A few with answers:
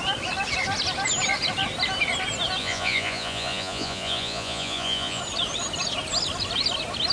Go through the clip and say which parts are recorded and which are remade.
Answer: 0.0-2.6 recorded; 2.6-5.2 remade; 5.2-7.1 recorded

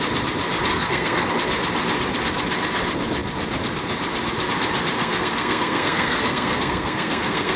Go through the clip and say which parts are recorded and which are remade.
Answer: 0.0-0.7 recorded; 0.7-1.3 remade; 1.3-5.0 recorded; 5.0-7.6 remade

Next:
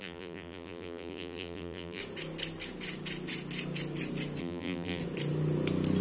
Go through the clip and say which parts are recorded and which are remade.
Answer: 0.0-2.0 remade; 2.0-4.4 recorded; 4.4-5.0 remade; 5.0-6.0 recorded